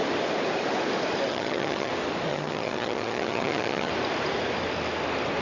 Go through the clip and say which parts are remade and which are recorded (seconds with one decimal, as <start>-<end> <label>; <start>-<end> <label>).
0.0-1.3 recorded; 1.3-1.9 remade; 1.9-2.3 recorded; 2.3-3.9 remade; 3.9-5.4 recorded